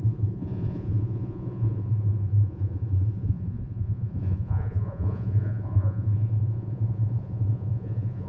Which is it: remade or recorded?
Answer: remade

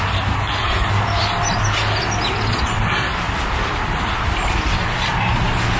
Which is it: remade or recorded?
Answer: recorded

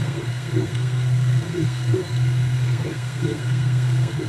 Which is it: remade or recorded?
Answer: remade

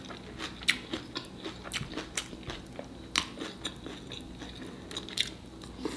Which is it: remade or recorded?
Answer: recorded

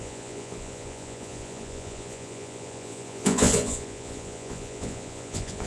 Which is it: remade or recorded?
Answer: remade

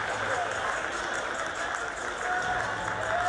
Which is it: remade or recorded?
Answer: recorded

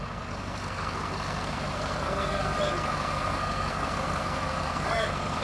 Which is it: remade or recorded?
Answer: remade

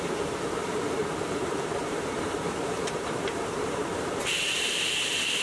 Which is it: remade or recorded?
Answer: remade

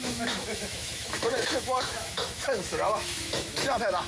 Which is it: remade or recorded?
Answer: remade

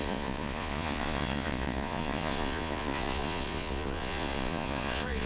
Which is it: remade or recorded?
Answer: remade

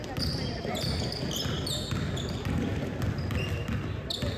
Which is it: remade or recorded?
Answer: recorded